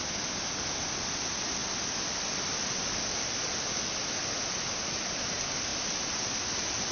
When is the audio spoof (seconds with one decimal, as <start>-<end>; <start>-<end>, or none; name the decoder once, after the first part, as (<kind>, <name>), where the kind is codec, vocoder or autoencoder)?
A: none